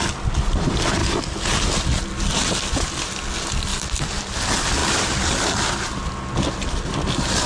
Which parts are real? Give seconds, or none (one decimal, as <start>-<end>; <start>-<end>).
0.0-7.5